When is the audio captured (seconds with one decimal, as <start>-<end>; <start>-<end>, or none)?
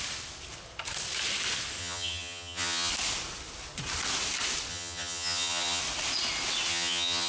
0.0-1.8; 2.9-4.7; 5.8-6.7